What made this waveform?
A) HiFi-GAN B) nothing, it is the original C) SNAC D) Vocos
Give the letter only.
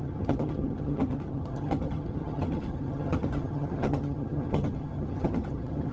A